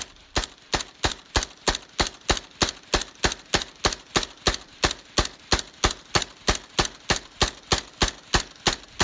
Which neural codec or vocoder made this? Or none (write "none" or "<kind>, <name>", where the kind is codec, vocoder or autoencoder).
none